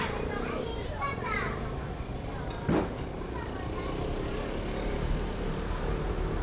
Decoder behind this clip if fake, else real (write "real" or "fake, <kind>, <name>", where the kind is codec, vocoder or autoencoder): fake, vocoder, BigVGAN v2